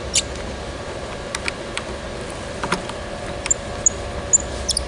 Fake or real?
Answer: real